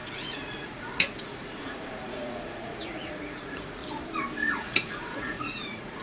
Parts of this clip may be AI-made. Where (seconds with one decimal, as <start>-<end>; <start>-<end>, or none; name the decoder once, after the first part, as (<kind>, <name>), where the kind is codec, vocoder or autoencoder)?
0.0-3.8 (vocoder, Vocos); 4.5-6.0